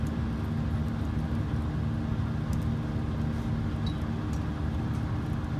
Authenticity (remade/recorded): recorded